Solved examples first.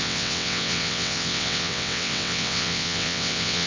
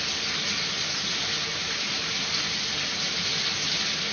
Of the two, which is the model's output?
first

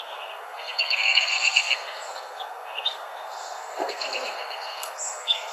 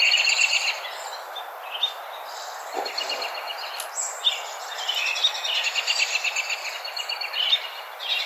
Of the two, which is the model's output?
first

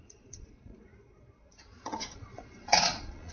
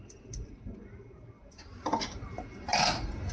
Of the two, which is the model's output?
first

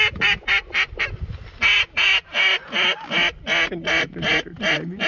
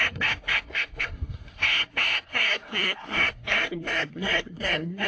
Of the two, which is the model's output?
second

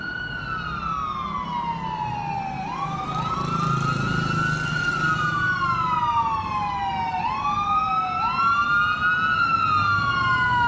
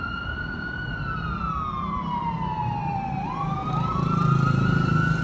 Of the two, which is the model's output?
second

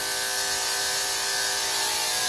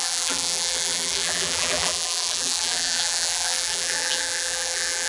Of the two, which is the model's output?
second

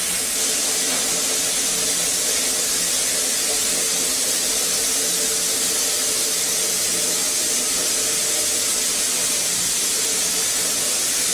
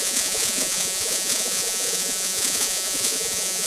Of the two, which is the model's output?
second